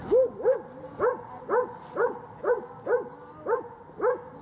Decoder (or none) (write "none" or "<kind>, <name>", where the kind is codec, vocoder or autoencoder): none